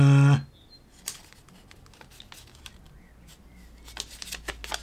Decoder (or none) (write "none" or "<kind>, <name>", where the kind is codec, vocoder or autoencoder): none